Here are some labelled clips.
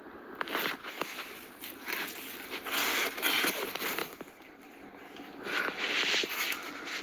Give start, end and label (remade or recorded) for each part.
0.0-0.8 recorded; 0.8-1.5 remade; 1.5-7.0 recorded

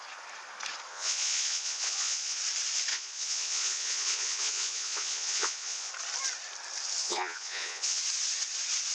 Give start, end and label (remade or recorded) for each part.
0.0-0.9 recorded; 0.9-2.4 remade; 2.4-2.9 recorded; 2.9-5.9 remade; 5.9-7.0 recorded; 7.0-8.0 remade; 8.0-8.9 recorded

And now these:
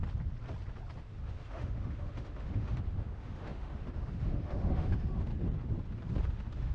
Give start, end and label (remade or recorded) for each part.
0.0-1.0 recorded; 1.0-5.3 remade; 5.3-6.3 recorded; 6.3-6.7 remade